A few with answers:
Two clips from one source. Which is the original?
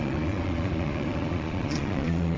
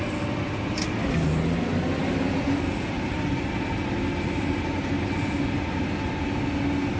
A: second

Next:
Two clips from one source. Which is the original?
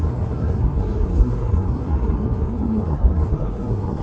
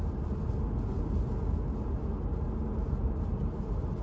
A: second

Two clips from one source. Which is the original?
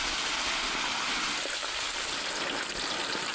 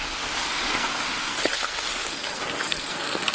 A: first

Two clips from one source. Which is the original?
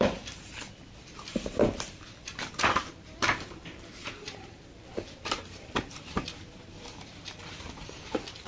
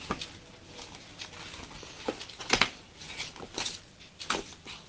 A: second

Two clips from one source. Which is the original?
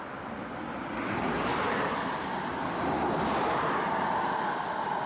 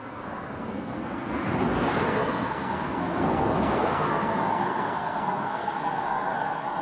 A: first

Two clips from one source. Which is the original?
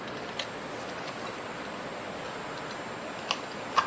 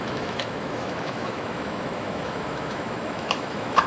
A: first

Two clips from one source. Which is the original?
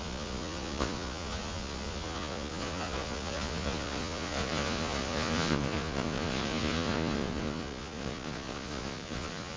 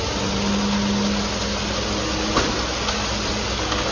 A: second